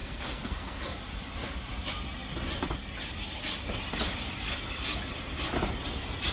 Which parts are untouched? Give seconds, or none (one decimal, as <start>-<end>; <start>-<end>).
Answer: 0.8-6.3